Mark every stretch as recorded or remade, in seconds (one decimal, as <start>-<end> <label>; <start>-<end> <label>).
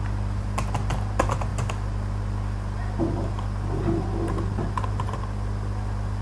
0.0-6.2 recorded